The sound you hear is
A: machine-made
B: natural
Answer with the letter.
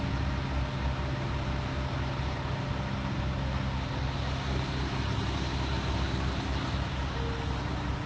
B